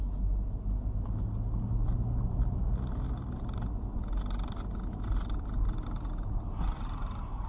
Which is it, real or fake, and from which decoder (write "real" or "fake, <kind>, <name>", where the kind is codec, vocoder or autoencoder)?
real